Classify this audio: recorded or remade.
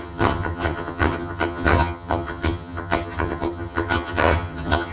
remade